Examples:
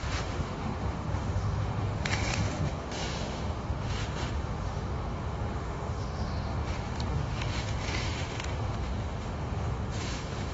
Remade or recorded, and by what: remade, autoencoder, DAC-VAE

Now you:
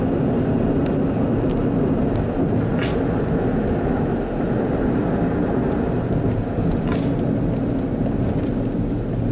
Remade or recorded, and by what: recorded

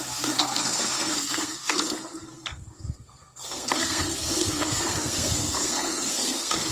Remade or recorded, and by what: remade, codec, SNAC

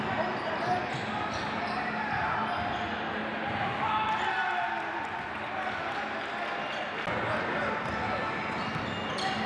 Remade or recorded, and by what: recorded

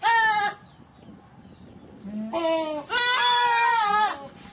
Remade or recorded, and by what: recorded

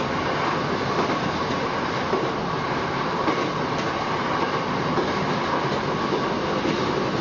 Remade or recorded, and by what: recorded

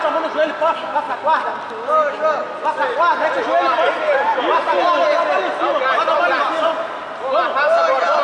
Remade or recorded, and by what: recorded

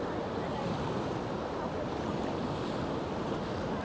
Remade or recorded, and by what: recorded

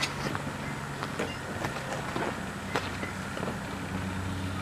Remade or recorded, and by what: recorded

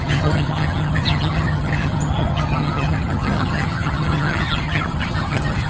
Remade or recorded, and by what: remade, vocoder, HiFi-GAN